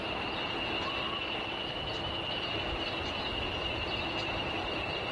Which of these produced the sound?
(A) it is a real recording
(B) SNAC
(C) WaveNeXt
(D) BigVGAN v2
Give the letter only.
A